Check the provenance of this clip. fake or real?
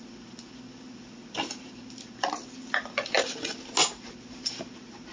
real